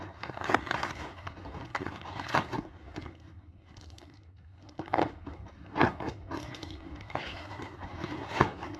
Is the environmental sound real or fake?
fake